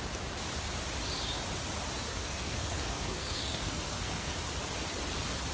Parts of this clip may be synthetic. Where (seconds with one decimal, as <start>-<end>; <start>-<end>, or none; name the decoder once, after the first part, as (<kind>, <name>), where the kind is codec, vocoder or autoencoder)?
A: 2.1-4.3 (codec, SNAC)